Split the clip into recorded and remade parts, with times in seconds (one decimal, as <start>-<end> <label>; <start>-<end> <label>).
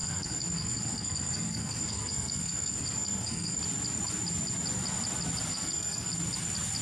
0.0-3.6 remade; 3.6-5.5 recorded; 5.5-6.1 remade; 6.1-6.8 recorded